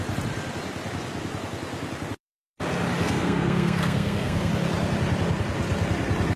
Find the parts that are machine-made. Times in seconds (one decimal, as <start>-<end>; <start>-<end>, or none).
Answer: 3.0-4.5